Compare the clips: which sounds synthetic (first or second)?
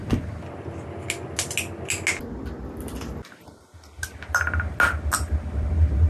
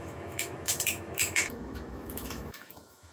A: second